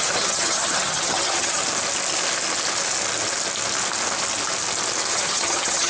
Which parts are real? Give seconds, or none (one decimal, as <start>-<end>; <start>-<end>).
1.6-5.1